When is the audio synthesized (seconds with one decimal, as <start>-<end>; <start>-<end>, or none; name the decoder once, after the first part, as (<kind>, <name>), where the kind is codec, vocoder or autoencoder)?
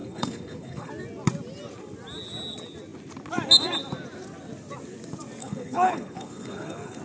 0.0-0.9 (codec, HILCodec); 5.4-7.0